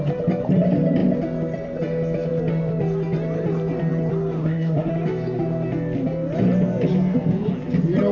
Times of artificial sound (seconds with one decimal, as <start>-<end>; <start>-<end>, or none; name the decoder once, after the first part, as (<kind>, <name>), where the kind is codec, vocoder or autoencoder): 4.4-4.9 (codec, SNAC)